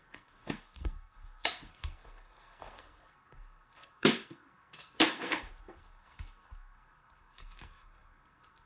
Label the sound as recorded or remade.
remade